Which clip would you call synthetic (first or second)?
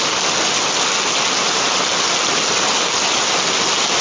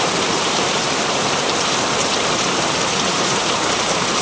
second